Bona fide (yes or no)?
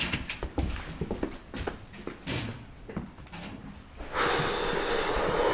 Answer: yes